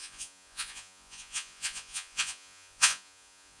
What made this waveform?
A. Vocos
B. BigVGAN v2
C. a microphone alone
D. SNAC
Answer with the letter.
A